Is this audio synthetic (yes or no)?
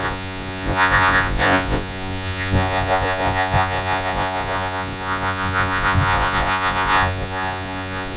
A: yes